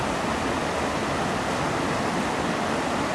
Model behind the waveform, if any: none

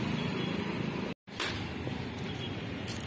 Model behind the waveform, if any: none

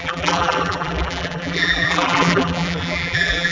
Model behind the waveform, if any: vocoder, BigVGAN v2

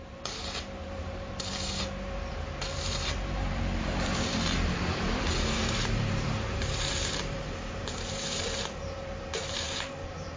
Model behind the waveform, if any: vocoder, BigVGAN v2